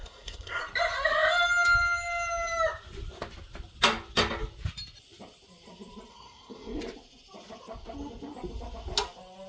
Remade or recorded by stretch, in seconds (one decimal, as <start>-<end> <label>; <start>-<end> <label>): 0.0-0.6 remade; 0.6-6.1 recorded; 6.1-6.8 remade; 6.8-9.5 recorded